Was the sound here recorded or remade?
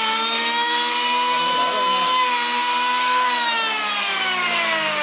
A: remade